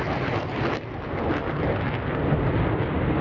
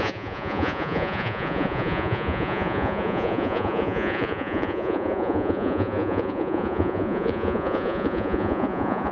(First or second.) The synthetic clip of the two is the second